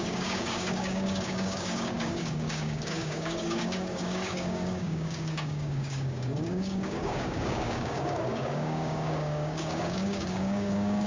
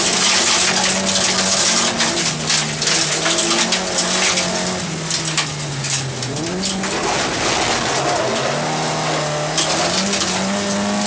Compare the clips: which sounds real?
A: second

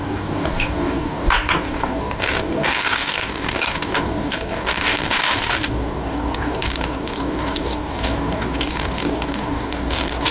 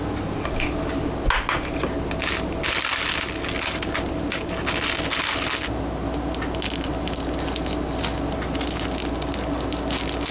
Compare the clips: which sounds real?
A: second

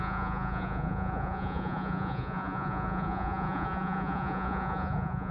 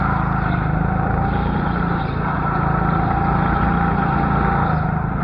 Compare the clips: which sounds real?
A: second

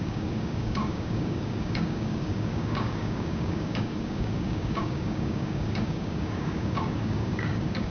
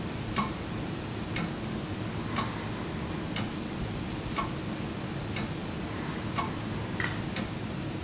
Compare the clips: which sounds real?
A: second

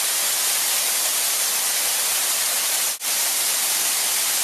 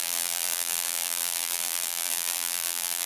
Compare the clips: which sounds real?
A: first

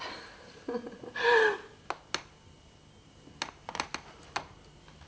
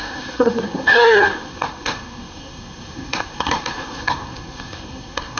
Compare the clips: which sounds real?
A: first